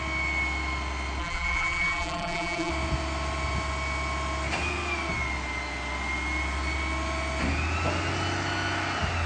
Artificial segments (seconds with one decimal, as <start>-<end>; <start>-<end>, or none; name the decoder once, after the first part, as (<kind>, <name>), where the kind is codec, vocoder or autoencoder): 1.2-2.7 (vocoder, BigVGAN v2)